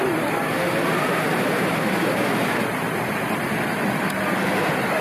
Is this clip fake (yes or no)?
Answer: no